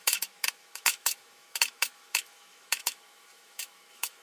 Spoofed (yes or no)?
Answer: yes